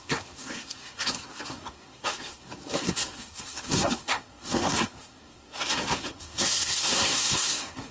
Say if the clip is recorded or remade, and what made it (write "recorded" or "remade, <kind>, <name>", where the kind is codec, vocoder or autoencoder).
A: remade, codec, SNAC